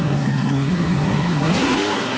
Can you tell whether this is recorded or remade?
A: remade